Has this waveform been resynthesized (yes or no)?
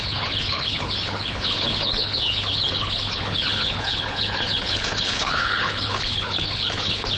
yes